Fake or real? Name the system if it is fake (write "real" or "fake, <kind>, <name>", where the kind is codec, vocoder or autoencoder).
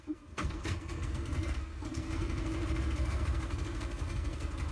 fake, codec, SNAC